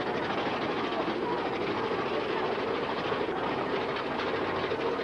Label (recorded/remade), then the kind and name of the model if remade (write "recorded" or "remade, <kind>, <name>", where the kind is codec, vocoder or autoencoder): recorded